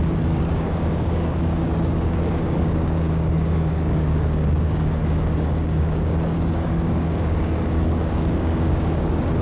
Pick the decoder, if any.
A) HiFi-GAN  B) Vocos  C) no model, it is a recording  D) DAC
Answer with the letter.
D